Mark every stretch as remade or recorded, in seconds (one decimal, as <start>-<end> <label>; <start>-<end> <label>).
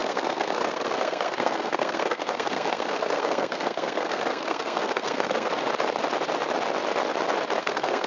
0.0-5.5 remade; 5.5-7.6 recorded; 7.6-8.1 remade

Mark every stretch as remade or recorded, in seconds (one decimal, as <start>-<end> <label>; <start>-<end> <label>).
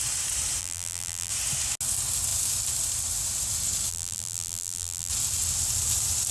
0.0-0.6 recorded; 0.6-1.3 remade; 1.3-3.9 recorded; 3.9-5.1 remade; 5.1-6.3 recorded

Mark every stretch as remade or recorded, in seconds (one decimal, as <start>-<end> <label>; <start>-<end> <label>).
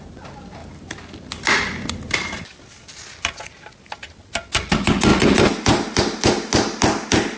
0.0-7.4 recorded